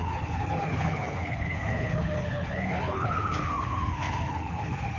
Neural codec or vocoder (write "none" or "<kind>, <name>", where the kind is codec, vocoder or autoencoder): codec, HILCodec